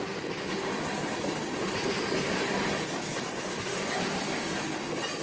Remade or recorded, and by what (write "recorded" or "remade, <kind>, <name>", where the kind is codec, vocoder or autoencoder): recorded